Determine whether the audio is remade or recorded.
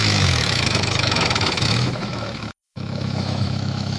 remade